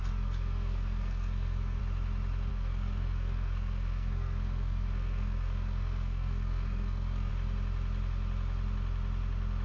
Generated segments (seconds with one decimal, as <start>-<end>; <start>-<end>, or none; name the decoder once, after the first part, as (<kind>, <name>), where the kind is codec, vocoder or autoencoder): 0.0-1.8 (codec, SNAC); 2.5-7.3